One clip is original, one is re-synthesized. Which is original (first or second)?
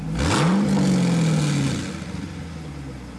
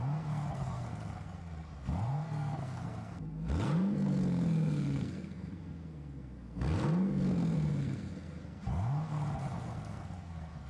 first